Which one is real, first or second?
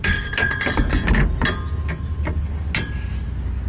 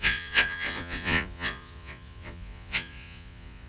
first